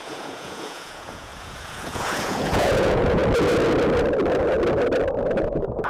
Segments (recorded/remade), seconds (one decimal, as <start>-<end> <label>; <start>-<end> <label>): 0.0-3.2 remade; 3.2-5.4 recorded; 5.4-5.9 remade